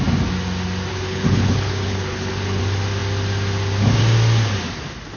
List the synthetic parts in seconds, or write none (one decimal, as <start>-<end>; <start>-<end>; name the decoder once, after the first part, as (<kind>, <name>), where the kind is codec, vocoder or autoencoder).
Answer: 0.9-2.6 (codec, HILCodec)